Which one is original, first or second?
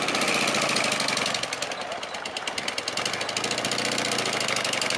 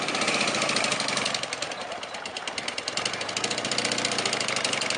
first